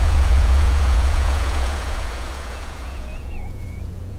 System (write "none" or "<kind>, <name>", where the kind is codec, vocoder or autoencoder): vocoder, Vocos